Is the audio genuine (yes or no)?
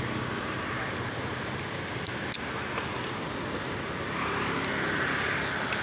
yes